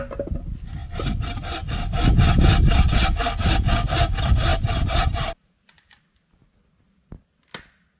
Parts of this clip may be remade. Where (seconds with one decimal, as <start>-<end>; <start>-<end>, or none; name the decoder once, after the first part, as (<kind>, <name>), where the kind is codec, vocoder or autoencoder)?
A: 0.8-1.4 (vocoder, BigVGAN v2); 4.5-6.0